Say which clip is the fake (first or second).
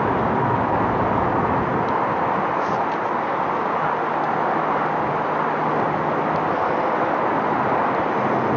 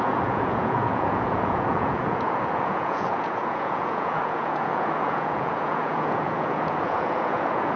second